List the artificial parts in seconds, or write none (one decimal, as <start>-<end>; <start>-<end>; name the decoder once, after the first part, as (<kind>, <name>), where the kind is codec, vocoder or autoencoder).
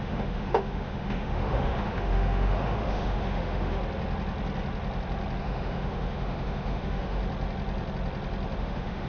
0.0-3.8 (autoencoder, DAC-VAE); 5.4-7.2; 8.6-9.1